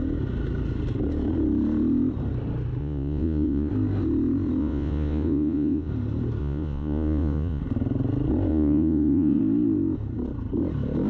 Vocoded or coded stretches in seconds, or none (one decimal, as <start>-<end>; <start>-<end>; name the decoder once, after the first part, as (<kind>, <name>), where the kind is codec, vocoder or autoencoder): 2.8-3.7 (vocoder, Vocos); 4.6-5.9; 6.4-7.6; 8.5-9.4